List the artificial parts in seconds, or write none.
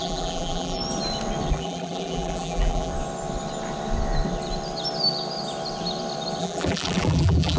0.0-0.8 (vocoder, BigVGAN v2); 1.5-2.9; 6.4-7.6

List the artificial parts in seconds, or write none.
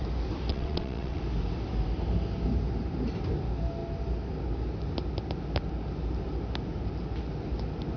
0.5-1.2 (vocoder, WaveNeXt)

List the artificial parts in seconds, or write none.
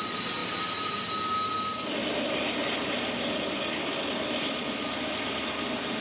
none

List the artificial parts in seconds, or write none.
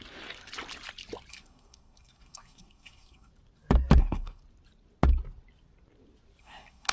1.3-3.3 (codec, SNAC); 4.0-4.4; 6.4-6.9